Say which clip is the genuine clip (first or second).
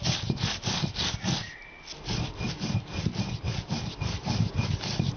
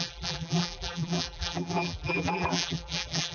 first